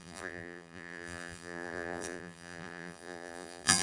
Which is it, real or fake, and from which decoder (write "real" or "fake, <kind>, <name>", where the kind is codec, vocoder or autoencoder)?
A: fake, vocoder, BigVGAN v2